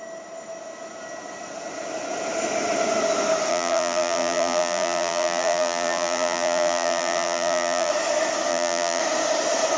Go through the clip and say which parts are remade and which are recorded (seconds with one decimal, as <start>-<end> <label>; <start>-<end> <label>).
0.0-3.5 recorded; 3.5-7.9 remade; 7.9-8.5 recorded; 8.5-9.0 remade; 9.0-9.8 recorded